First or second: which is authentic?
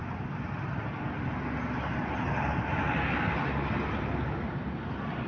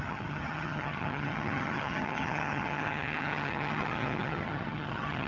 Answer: first